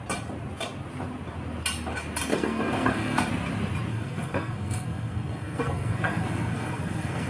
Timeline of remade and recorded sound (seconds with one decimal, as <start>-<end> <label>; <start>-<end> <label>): 0.0-2.3 recorded; 2.3-3.3 remade; 3.3-3.9 recorded; 3.9-7.3 remade